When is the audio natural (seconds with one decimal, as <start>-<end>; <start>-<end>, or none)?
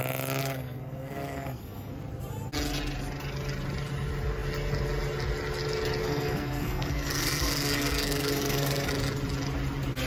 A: 0.0-0.4; 2.0-6.0; 8.9-10.1